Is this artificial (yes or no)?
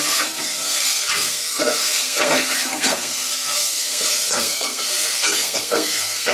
yes